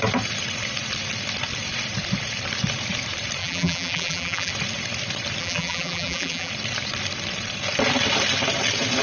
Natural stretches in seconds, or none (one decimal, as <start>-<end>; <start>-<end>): 0.0-3.4; 4.5-5.4; 6.5-9.0